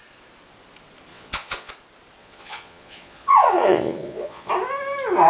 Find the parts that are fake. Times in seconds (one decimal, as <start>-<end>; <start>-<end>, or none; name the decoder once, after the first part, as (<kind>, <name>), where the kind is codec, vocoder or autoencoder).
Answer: 1.1-1.7 (vocoder, Vocos); 2.2-4.5